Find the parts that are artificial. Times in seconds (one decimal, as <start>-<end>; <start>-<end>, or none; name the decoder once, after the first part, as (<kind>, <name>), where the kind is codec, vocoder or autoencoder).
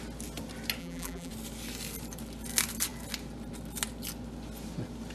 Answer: 0.8-1.3 (vocoder, BigVGAN v2)